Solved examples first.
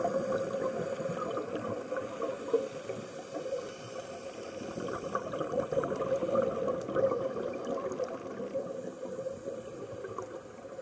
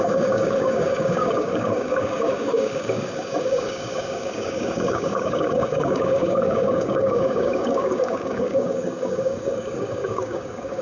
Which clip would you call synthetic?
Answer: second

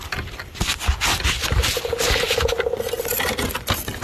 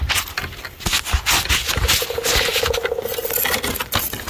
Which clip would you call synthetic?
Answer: first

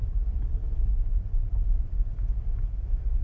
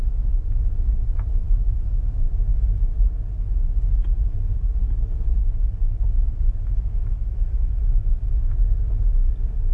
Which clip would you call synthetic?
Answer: first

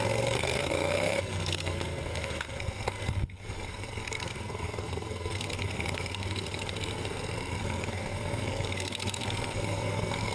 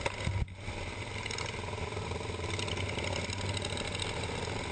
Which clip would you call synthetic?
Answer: first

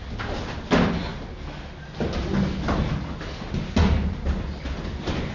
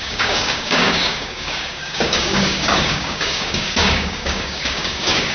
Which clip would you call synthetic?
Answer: second